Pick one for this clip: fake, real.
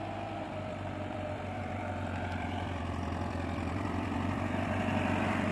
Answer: fake